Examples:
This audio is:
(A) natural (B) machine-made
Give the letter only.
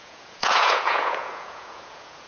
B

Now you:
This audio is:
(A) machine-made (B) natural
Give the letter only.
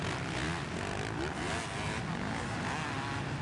B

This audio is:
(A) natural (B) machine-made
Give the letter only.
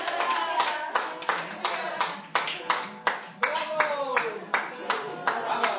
A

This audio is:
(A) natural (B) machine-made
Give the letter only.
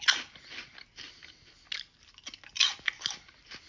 A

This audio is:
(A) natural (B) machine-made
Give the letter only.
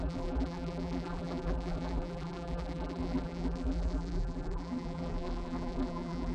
B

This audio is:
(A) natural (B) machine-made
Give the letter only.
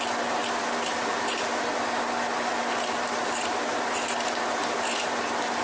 A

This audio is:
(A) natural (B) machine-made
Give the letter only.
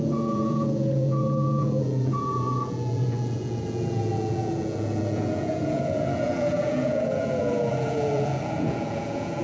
B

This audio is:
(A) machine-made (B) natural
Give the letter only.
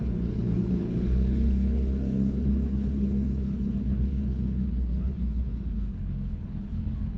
A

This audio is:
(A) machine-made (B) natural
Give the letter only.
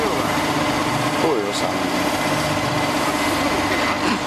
B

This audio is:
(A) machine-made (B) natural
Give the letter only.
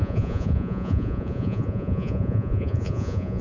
A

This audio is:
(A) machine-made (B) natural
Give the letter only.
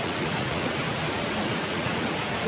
A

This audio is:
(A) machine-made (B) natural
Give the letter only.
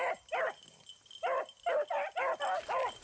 B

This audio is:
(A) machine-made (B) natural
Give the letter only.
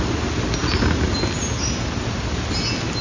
B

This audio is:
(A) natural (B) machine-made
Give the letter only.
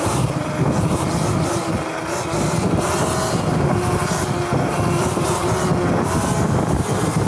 A